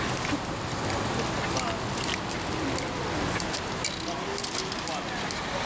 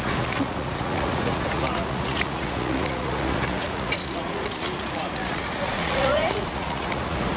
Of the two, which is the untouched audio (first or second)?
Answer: first